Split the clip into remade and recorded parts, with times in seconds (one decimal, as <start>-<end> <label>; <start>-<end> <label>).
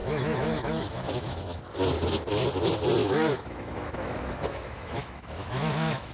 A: 0.0-1.6 remade; 1.6-3.0 recorded; 3.0-6.1 remade